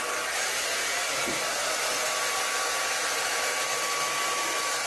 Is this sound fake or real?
real